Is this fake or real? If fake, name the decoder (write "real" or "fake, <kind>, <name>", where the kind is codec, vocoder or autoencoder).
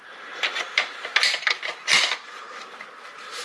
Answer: real